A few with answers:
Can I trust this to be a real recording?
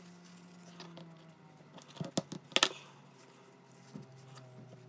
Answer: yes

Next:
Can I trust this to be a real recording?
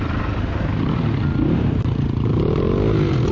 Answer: yes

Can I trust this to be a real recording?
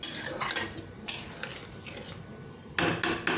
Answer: yes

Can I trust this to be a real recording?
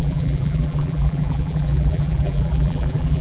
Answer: no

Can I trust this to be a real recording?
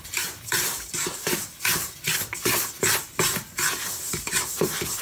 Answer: no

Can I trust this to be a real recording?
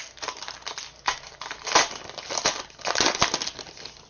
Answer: yes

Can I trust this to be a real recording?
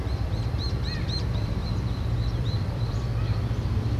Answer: no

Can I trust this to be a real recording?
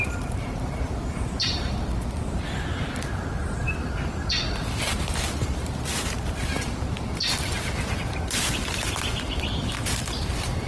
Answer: no